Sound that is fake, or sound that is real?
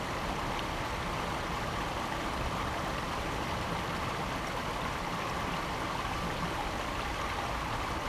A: real